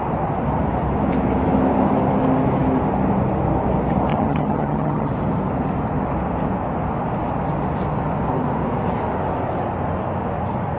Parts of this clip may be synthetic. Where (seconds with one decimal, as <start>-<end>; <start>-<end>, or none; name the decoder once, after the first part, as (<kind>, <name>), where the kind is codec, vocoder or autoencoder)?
4.1-5.1 (vocoder, HiFi-GAN)

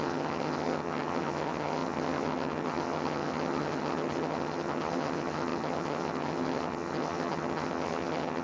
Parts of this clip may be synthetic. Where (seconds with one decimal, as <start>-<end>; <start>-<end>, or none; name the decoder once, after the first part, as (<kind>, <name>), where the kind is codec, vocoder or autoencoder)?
0.0-8.4 (vocoder, HiFi-GAN)

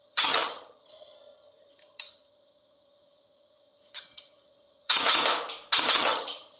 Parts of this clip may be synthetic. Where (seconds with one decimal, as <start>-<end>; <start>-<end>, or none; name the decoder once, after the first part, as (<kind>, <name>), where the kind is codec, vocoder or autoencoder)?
0.0-5.2 (vocoder, HiFi-GAN); 5.9-6.6